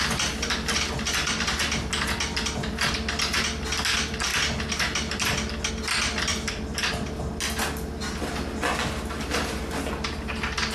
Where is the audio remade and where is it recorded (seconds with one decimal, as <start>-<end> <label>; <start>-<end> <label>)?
0.0-6.3 recorded; 6.3-6.9 remade; 6.9-10.7 recorded